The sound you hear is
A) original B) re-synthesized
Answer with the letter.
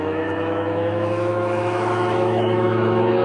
B